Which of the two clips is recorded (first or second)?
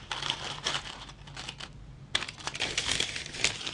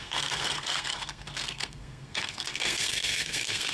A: first